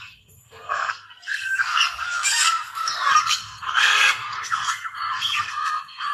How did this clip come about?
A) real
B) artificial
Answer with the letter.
B